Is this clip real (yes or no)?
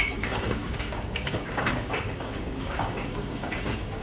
no